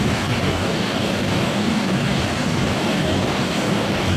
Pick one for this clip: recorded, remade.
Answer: remade